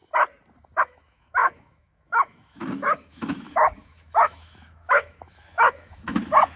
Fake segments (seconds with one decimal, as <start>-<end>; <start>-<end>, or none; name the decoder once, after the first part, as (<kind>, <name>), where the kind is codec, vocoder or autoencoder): 0.8-6.6 (autoencoder, DAC-VAE)